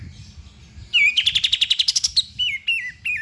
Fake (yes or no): no